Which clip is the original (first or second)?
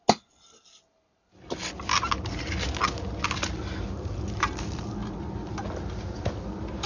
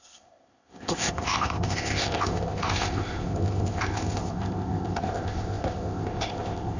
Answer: first